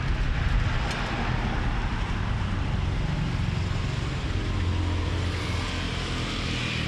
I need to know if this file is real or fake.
real